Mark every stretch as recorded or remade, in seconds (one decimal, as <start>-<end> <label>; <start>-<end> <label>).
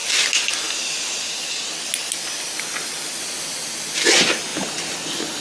0.0-5.4 recorded